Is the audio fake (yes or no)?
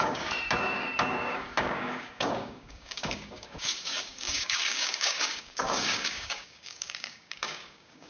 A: yes